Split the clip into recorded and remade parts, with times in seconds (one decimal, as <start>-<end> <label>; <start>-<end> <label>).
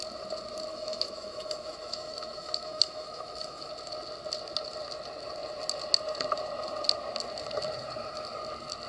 0.0-0.7 recorded; 0.7-3.7 remade; 3.7-8.9 recorded